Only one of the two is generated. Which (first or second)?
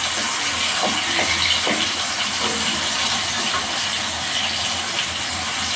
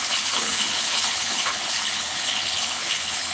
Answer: second